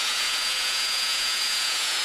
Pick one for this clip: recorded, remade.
remade